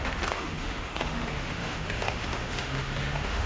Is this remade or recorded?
remade